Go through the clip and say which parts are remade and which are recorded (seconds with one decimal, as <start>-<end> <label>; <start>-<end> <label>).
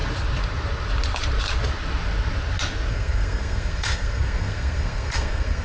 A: 0.0-2.9 recorded; 2.9-5.6 remade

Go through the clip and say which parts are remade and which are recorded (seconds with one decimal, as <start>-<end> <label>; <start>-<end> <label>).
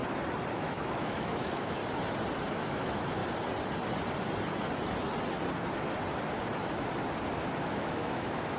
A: 0.0-0.5 recorded; 0.5-1.8 remade; 1.8-2.5 recorded; 2.5-3.2 remade; 3.2-7.6 recorded; 7.6-8.6 remade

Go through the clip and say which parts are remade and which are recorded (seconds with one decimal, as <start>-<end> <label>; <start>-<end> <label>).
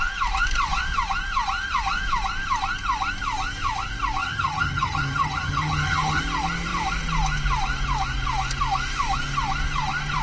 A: 0.0-4.2 recorded; 4.2-6.2 remade; 6.2-10.2 recorded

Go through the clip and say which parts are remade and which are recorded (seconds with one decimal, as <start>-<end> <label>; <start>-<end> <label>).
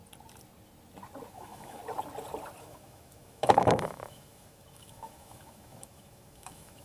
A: 0.0-1.3 recorded; 1.3-1.8 remade; 1.8-2.6 recorded; 2.6-6.8 remade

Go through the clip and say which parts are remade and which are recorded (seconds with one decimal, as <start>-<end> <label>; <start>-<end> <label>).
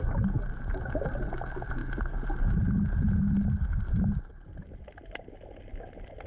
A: 0.0-6.3 recorded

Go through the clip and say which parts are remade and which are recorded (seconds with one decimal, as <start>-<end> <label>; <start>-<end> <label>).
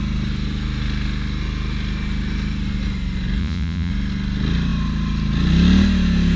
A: 0.0-3.4 recorded; 3.4-3.9 remade; 3.9-6.4 recorded